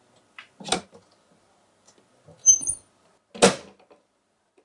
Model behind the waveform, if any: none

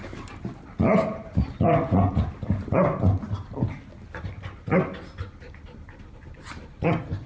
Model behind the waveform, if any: none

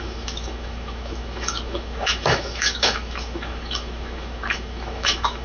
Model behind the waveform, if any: autoencoder, DAC-VAE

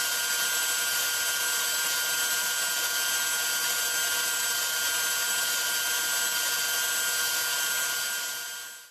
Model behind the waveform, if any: none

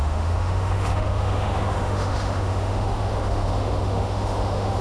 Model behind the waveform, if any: autoencoder, DAC-VAE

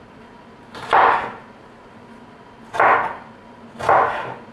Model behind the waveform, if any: none